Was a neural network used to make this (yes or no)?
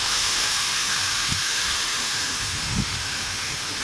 yes